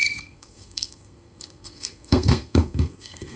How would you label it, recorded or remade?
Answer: remade